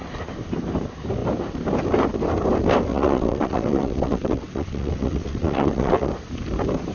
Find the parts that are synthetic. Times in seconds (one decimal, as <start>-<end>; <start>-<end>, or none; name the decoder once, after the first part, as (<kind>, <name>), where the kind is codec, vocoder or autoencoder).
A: 2.9-6.1 (vocoder, WaveNeXt)